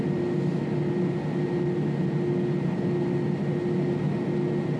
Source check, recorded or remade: recorded